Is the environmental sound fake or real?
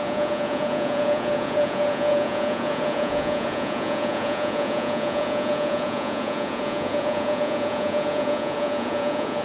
fake